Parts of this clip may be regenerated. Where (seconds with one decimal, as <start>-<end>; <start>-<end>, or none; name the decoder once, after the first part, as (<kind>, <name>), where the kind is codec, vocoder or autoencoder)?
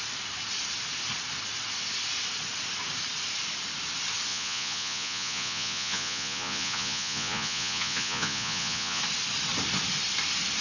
4.3-9.0 (vocoder, Vocos)